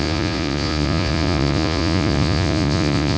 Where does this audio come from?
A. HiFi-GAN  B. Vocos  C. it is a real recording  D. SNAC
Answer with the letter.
B